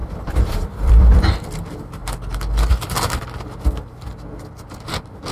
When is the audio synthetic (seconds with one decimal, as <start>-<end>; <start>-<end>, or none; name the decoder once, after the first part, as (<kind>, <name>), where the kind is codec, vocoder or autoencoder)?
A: 0.0-1.3 (vocoder, BigVGAN v2)

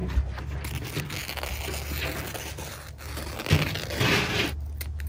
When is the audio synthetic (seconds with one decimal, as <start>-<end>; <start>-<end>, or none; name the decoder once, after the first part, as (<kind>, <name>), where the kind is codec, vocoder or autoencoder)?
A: none

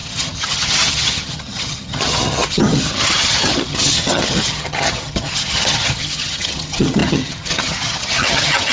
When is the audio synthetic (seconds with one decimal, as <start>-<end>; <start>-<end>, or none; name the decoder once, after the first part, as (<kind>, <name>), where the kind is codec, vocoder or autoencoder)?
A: 0.0-8.7 (vocoder, HiFi-GAN)

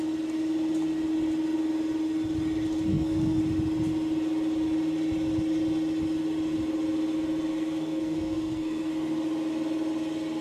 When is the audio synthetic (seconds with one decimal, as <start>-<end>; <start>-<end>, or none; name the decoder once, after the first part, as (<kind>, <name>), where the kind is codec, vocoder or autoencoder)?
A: 2.9-3.4 (codec, SNAC); 7.5-8.9

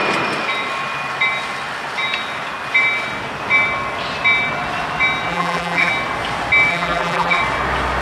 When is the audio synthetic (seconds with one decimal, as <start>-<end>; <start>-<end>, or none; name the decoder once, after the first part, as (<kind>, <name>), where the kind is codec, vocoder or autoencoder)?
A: 5.3-5.9 (vocoder, BigVGAN v2); 6.7-7.4

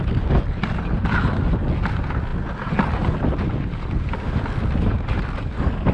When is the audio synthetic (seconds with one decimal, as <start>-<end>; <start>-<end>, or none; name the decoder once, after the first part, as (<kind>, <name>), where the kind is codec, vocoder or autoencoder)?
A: none